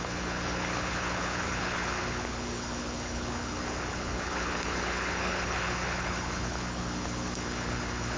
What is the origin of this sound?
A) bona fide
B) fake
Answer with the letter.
B